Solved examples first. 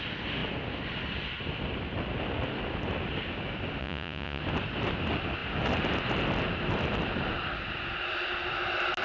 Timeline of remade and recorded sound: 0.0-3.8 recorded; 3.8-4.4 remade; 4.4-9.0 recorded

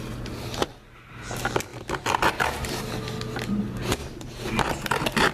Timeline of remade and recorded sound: 0.0-5.3 recorded

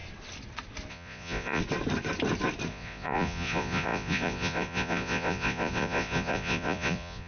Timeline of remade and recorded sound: 0.0-0.9 recorded; 0.9-1.6 remade; 1.6-2.7 recorded; 2.7-7.3 remade

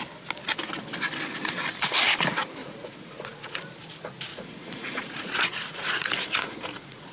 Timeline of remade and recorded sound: 0.0-2.6 recorded; 2.6-3.6 remade; 3.6-4.3 recorded; 4.3-7.1 remade

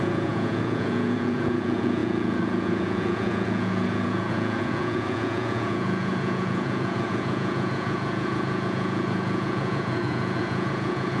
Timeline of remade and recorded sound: 0.0-11.2 remade